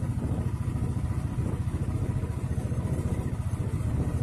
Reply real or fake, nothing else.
real